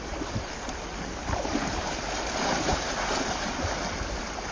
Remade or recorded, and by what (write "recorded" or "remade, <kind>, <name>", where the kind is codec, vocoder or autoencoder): remade, vocoder, BigVGAN v2